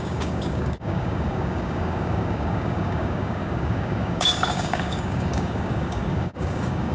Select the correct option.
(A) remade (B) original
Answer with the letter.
A